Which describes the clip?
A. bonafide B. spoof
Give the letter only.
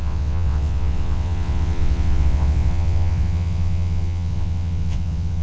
B